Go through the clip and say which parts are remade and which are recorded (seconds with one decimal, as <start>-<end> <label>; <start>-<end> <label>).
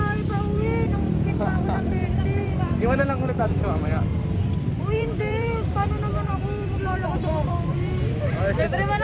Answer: 0.0-4.1 remade; 4.1-4.8 recorded; 4.8-9.0 remade